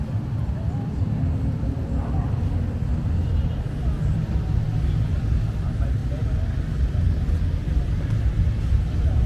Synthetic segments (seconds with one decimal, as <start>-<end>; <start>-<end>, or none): none